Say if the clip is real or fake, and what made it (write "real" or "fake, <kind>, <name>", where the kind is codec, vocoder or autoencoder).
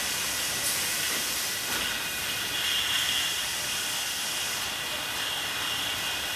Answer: real